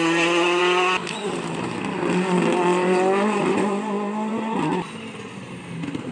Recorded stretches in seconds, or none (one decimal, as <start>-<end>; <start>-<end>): 0.0-6.1